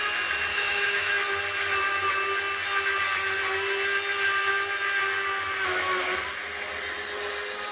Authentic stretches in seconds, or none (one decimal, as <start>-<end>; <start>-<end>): 0.0-0.5; 1.1-7.7